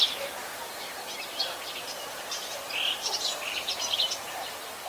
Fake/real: real